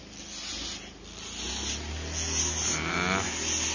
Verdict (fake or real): real